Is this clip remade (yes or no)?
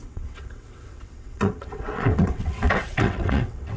yes